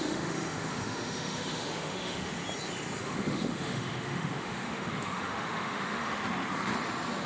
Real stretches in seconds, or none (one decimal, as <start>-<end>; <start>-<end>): 2.4-3.0; 6.2-7.3